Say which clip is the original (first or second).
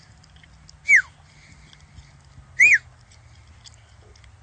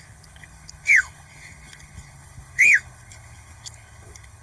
first